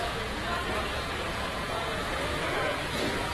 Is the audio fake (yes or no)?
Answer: yes